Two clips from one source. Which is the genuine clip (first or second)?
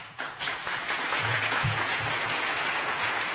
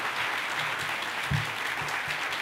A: second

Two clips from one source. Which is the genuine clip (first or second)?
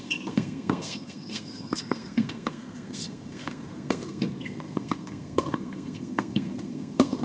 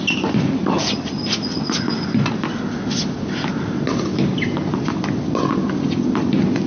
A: second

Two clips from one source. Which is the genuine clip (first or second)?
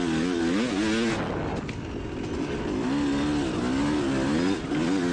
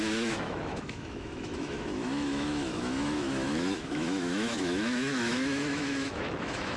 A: first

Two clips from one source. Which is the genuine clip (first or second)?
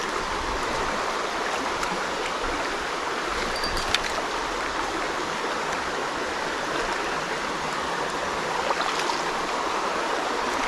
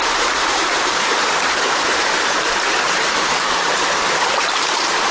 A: first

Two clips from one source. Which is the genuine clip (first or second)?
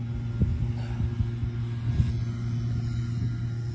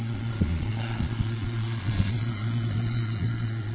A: first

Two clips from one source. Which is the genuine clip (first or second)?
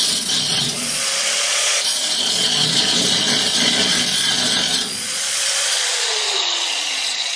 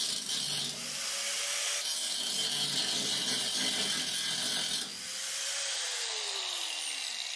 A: second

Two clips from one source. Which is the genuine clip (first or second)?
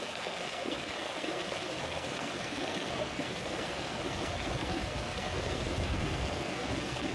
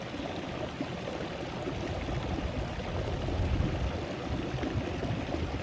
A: second